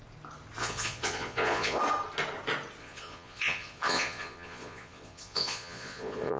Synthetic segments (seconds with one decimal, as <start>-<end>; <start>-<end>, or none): 0.6-1.8; 2.8-6.4